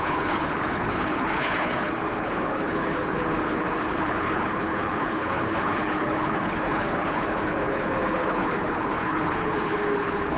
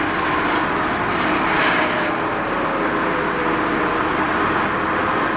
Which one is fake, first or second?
first